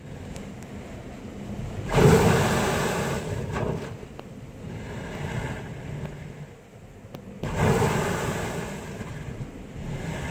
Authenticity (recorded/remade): recorded